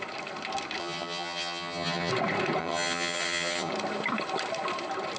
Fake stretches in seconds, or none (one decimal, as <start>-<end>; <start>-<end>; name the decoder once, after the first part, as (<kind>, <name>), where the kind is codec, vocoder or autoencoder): 0.8-2.1 (vocoder, HiFi-GAN); 2.6-3.7